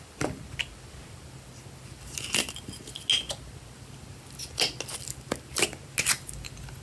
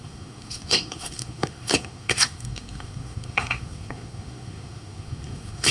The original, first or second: first